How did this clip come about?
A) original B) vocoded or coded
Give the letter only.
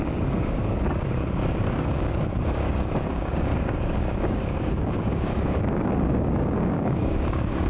B